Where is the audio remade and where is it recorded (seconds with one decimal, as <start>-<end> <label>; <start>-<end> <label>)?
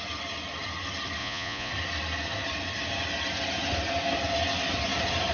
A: 0.0-1.2 recorded; 1.2-1.7 remade; 1.7-5.3 recorded